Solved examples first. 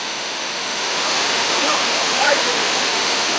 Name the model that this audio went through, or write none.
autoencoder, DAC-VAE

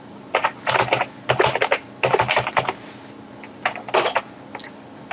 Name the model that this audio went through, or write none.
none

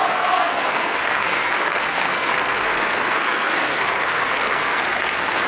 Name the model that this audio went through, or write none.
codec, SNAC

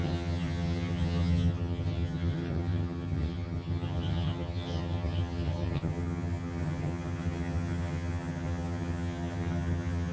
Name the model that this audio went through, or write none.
vocoder, HiFi-GAN